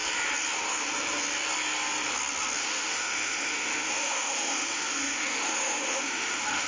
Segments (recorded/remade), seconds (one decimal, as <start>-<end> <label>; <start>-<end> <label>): 0.0-2.6 recorded; 2.6-6.7 remade